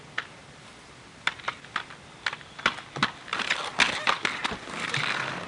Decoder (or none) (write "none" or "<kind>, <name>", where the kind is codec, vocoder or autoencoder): none